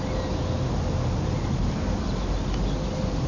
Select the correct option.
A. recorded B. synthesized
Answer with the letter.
A